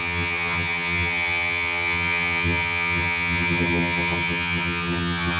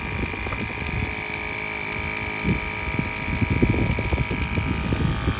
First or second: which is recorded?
second